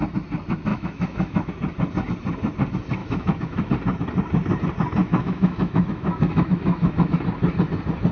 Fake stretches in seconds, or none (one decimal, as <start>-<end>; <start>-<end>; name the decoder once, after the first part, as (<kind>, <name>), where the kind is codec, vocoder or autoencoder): 0.7-1.5 (autoencoder, DAC-VAE); 3.0-3.7; 5.0-7.2